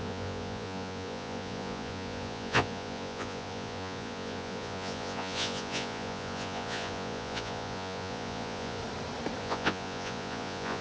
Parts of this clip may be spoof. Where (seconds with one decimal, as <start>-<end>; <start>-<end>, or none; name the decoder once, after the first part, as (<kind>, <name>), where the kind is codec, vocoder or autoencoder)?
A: 0.0-8.8 (vocoder, Vocos); 9.4-10.8

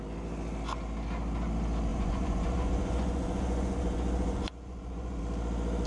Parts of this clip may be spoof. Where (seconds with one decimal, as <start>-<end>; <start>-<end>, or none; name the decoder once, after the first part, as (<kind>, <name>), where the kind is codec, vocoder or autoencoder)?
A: 1.9-5.2 (vocoder, Vocos)

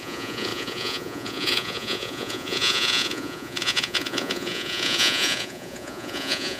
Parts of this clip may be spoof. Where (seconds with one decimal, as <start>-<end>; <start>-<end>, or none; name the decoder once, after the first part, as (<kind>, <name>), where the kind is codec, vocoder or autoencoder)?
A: 0.0-6.6 (vocoder, Vocos)

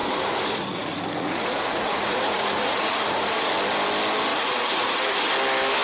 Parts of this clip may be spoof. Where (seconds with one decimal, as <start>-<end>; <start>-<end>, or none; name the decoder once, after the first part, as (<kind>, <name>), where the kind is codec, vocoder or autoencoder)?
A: 0.0-3.5 (vocoder, Vocos); 4.3-5.3

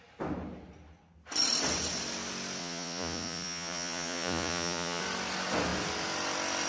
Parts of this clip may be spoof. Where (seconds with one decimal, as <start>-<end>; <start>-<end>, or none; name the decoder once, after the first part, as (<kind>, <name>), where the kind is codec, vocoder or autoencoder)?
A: 2.6-5.0 (vocoder, Vocos)

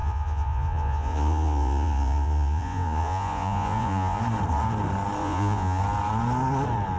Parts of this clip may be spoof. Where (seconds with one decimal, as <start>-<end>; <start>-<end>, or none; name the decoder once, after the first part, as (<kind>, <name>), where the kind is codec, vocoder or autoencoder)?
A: 0.0-4.2 (vocoder, Vocos); 5.2-5.8

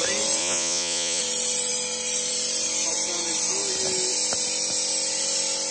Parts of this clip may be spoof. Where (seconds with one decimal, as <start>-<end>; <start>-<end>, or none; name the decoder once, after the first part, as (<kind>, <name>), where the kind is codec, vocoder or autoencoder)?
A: 0.4-1.2 (vocoder, Vocos)